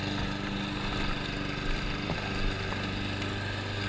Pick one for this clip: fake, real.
real